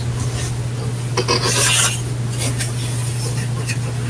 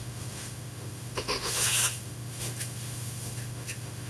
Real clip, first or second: first